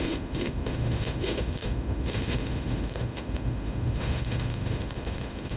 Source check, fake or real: fake